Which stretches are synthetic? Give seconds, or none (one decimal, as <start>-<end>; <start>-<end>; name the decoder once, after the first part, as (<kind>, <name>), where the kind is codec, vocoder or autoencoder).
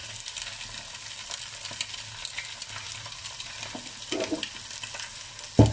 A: 0.0-1.7 (vocoder, BigVGAN v2)